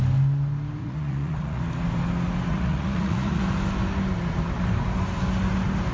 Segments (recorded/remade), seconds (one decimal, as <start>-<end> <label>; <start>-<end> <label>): 0.0-0.8 recorded; 0.8-1.6 remade; 1.6-2.5 recorded; 2.5-3.4 remade; 3.4-5.9 recorded